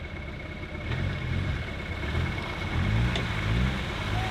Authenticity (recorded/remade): recorded